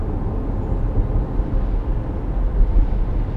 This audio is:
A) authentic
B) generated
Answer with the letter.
A